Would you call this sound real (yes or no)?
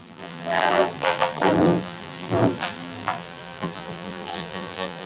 no